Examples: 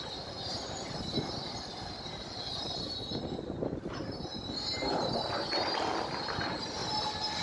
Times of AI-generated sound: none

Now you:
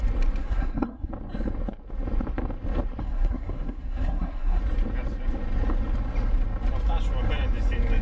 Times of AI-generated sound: 0.4-1.1; 3.0-4.6